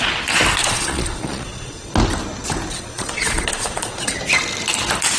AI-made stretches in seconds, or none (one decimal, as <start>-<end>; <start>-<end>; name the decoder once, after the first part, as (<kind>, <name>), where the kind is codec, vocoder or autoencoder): 0.6-1.9 (vocoder, Vocos); 2.7-4.2